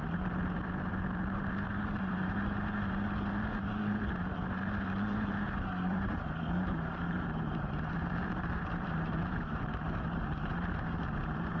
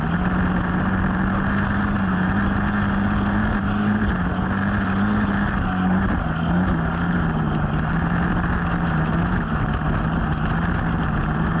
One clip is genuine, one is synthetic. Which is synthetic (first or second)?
first